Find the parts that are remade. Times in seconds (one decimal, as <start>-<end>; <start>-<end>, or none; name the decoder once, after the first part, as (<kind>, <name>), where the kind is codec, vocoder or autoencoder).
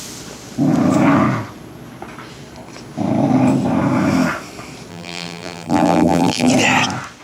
4.9-6.5 (vocoder, BigVGAN v2)